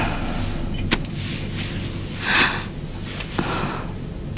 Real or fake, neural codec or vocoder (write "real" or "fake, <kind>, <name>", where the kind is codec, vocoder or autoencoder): real